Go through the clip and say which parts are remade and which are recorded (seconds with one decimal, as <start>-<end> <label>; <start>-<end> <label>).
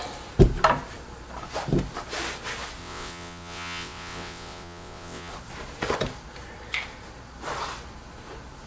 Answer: 0.0-2.8 recorded; 2.8-5.3 remade; 5.3-8.7 recorded